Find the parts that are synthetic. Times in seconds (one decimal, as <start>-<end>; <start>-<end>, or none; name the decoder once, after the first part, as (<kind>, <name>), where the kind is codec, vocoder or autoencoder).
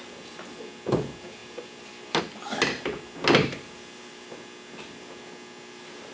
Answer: none